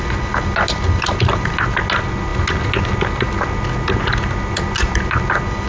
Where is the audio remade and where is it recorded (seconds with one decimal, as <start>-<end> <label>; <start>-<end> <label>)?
0.0-5.7 recorded